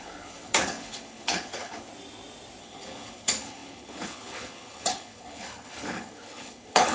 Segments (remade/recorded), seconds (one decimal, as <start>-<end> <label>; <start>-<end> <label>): 0.0-1.9 remade; 1.9-2.6 recorded; 2.6-6.9 remade